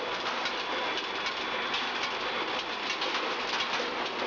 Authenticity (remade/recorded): recorded